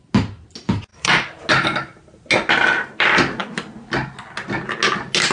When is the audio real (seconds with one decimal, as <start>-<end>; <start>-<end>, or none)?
0.0-0.9; 1.5-5.3